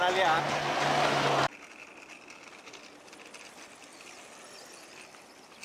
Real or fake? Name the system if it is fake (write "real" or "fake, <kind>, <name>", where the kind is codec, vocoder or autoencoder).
real